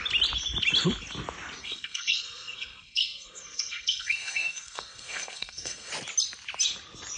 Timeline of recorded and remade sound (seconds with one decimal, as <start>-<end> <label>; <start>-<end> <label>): 0.0-1.6 recorded; 1.6-5.9 remade; 5.9-7.2 recorded